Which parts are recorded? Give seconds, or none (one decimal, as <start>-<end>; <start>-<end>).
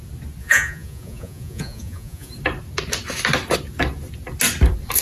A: 0.0-0.4; 2.3-5.0